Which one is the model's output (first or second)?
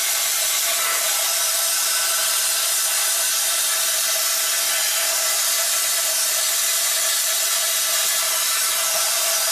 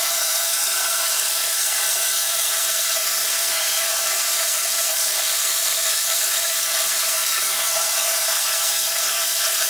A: second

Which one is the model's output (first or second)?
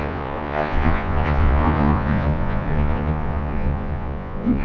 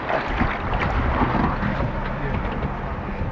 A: first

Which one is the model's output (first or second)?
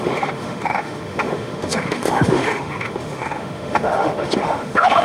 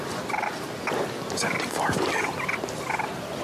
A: first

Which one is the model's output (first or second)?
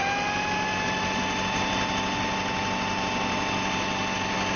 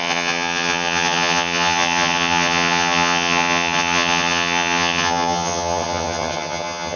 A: second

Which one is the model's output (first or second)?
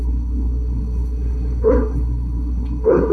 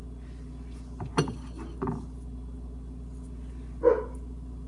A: first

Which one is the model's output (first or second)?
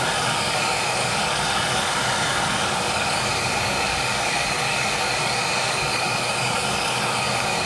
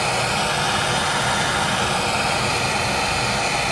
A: first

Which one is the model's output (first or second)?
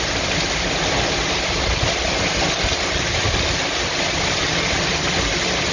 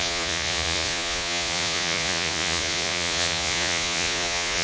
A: second